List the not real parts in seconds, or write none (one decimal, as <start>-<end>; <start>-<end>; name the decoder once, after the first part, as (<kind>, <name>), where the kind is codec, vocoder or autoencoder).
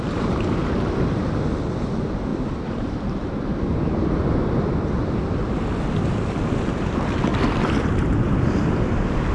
2.3-3.4 (vocoder, BigVGAN v2)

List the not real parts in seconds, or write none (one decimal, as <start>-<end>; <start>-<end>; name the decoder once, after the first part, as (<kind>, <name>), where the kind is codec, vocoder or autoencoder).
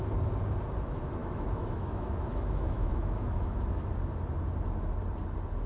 1.2-3.9 (autoencoder, DAC-VAE)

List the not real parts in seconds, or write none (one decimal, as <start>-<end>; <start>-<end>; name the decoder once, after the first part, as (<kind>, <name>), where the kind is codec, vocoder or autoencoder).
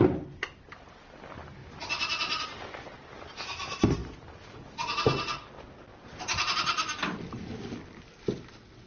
none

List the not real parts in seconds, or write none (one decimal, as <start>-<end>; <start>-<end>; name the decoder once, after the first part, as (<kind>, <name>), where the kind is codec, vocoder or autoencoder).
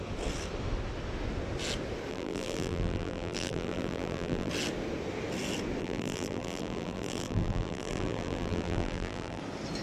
2.1-4.5 (vocoder, BigVGAN v2); 5.8-9.4